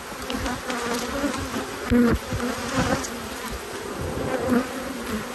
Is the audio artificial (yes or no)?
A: no